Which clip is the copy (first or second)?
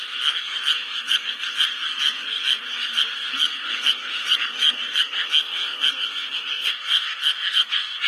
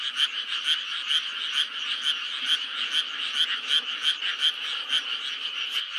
first